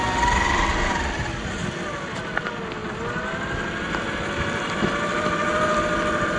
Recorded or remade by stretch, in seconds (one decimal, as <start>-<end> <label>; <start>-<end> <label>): 0.0-6.4 recorded